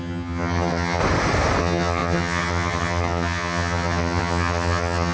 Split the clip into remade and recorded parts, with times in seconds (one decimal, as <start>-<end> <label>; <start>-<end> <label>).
0.0-1.0 remade; 1.0-1.6 recorded; 1.6-5.1 remade